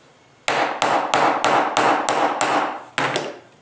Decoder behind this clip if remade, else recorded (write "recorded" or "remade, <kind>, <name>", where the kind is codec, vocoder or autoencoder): recorded